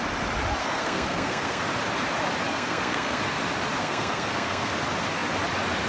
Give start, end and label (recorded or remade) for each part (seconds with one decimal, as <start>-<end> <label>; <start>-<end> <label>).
0.0-0.6 recorded; 0.6-1.6 remade; 1.6-2.5 recorded; 2.5-3.2 remade; 3.2-3.8 recorded; 3.8-4.7 remade; 4.7-5.9 recorded